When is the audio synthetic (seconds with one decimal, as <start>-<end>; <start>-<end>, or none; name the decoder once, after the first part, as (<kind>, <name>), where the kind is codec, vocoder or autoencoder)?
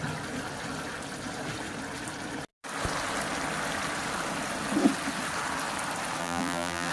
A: 6.2-6.9 (vocoder, BigVGAN v2)